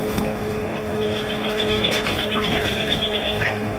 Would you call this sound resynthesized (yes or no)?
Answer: yes